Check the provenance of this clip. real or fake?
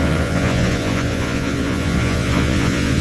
fake